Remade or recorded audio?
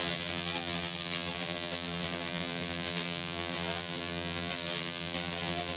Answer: remade